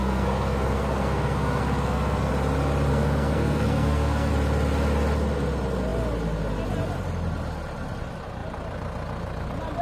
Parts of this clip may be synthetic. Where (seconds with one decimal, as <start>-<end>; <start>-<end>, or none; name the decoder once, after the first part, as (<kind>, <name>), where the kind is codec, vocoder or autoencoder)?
0.0-2.3 (codec, SNAC); 2.9-4.3